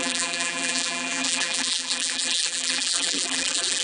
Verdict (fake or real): fake